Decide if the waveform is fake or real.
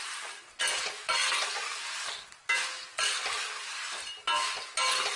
real